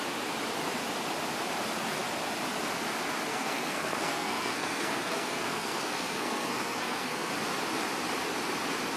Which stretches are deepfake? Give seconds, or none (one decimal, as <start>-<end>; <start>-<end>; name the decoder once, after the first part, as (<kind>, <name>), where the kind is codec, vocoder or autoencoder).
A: 3.3-7.3 (codec, SNAC)